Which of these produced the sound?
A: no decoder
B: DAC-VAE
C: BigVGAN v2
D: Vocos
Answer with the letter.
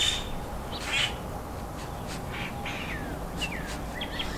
A